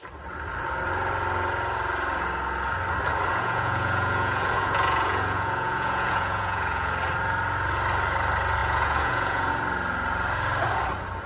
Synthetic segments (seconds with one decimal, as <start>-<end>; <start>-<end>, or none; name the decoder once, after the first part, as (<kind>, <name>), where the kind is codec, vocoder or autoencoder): 3.3-6.9 (vocoder, Vocos); 8.6-9.5